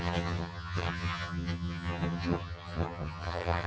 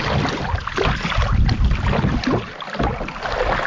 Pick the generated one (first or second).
first